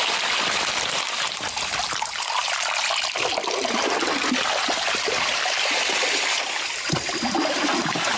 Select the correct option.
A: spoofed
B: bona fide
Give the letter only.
B